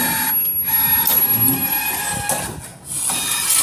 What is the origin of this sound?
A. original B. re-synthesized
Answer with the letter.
A